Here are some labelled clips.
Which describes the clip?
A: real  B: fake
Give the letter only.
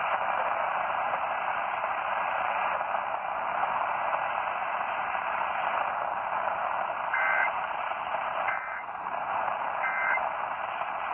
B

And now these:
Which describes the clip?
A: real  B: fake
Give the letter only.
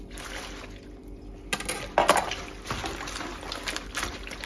A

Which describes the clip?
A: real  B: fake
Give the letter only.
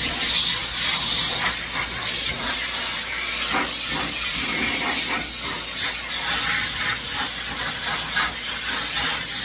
A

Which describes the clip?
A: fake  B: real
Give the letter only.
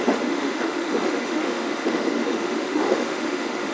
A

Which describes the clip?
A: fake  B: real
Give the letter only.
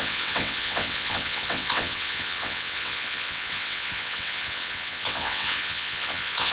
A